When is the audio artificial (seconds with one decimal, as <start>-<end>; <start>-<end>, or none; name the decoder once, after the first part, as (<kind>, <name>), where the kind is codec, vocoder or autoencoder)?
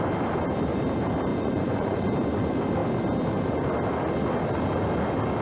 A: 1.3-2.1 (vocoder, Vocos)